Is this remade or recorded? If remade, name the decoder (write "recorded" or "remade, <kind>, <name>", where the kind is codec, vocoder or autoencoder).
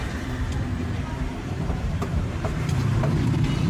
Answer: remade, vocoder, BigVGAN v2